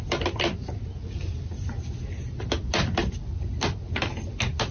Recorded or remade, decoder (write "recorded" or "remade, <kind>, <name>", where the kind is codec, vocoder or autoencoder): recorded